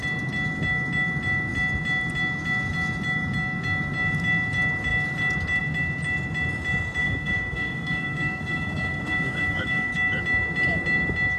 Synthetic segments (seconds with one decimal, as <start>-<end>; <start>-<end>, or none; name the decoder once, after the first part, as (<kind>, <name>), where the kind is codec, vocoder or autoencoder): 7.0-9.9 (codec, DAC)